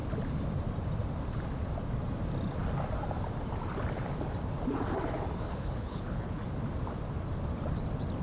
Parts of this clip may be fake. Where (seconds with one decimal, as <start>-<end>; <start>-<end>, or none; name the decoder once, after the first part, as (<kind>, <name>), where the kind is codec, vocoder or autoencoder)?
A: 5.5-6.4 (codec, HILCodec)